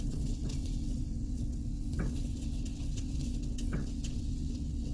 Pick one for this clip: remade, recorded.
remade